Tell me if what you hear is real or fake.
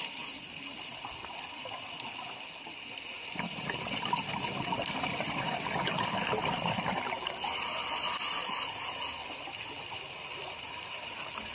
real